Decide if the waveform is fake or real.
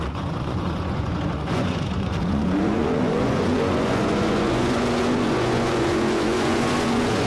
fake